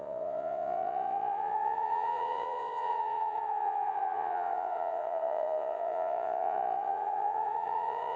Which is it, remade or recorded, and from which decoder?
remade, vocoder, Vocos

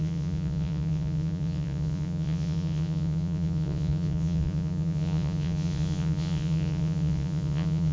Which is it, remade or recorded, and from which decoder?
remade, vocoder, Vocos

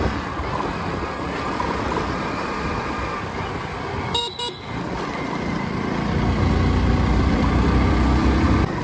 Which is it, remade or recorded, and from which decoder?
recorded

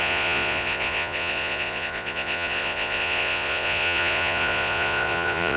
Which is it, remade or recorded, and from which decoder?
remade, vocoder, Vocos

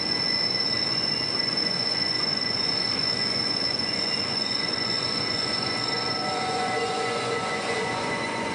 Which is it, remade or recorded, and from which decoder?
remade, vocoder, Vocos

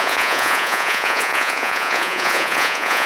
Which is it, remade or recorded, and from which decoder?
remade, vocoder, Vocos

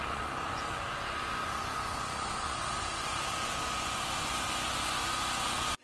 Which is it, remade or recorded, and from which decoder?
remade, vocoder, Vocos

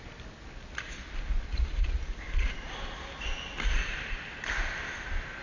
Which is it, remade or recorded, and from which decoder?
recorded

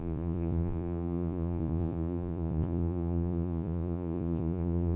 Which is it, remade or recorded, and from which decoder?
remade, vocoder, Vocos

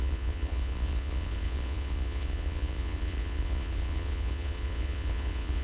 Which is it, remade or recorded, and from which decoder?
remade, vocoder, Vocos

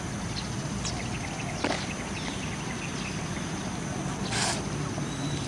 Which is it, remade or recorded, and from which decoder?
recorded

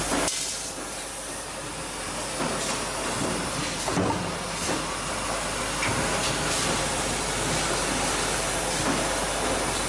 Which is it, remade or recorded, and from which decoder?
recorded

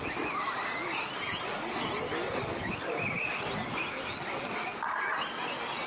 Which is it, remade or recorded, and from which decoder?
recorded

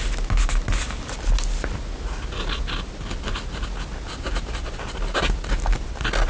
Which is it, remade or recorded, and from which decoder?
recorded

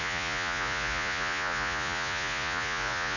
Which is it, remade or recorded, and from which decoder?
remade, vocoder, Vocos